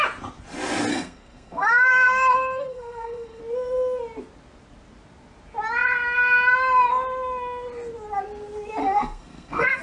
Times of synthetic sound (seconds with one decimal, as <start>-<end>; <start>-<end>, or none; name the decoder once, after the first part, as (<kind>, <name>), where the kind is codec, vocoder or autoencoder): 0.9-3.4 (codec, SNAC); 8.8-9.8